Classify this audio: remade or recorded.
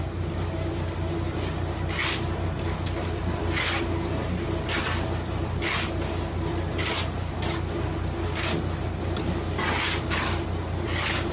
recorded